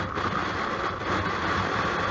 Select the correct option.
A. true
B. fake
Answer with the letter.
A